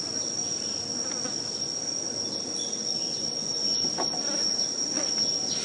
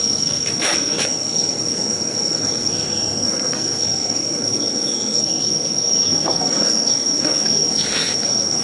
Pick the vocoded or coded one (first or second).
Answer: second